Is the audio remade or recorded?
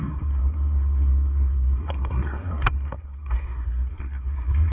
remade